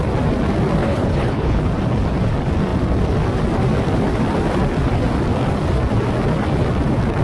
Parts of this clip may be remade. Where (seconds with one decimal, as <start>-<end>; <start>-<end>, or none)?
0.8-1.6